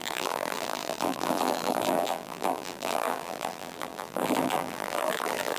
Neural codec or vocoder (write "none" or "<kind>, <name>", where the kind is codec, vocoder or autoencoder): vocoder, BigVGAN v2